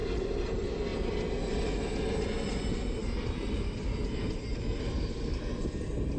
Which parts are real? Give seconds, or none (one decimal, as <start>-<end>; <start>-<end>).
0.0-3.0; 4.6-6.2

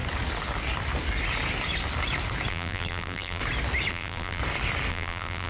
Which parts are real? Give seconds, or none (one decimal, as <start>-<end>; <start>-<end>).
0.0-2.5; 3.4-3.9; 4.4-4.9

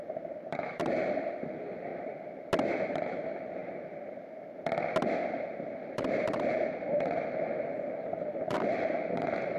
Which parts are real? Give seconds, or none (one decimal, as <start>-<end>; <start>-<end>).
1.9-2.9; 3.6-5.9

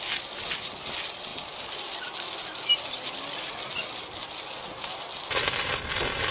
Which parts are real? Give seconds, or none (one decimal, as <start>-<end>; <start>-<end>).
0.0-6.3

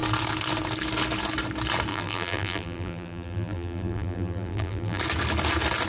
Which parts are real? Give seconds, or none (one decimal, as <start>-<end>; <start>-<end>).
0.0-1.9; 5.0-5.9